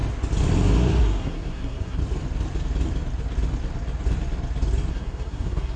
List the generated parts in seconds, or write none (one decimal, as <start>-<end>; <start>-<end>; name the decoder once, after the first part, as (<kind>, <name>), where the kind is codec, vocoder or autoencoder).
1.0-2.0 (codec, SNAC); 4.9-5.8